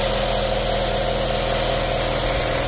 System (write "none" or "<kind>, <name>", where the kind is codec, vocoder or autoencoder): none